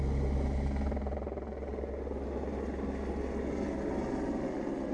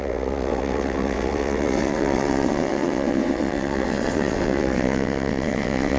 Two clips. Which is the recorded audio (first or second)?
first